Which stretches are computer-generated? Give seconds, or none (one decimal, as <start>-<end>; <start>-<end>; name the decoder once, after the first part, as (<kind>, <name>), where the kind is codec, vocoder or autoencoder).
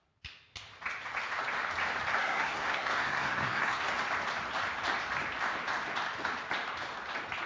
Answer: 2.2-3.9 (codec, SNAC)